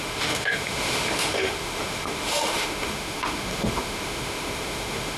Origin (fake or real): fake